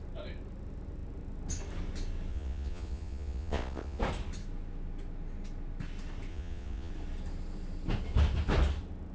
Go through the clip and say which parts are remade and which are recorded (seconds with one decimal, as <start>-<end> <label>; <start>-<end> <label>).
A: 0.0-2.3 recorded; 2.3-4.0 remade; 4.0-6.3 recorded; 6.3-6.9 remade; 6.9-9.1 recorded